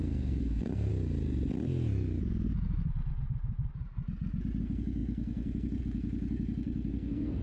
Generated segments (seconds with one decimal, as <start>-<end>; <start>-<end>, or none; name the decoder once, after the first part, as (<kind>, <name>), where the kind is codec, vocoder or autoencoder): 0.0-0.9 (codec, SNAC); 4.6-7.4